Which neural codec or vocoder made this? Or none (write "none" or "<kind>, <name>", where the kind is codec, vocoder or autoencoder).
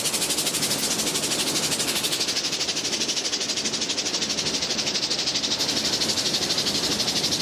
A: none